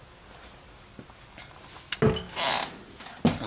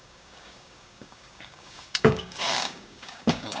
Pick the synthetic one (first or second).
second